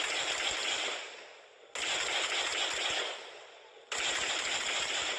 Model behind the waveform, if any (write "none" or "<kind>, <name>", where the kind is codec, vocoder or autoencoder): none